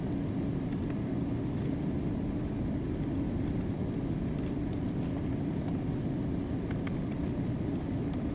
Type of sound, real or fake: real